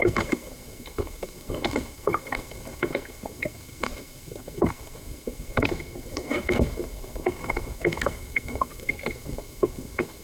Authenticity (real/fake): fake